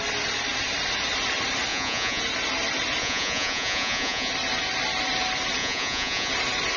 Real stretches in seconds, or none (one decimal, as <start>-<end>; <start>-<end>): 0.0-1.7; 2.2-3.0; 4.3-5.6; 6.3-6.8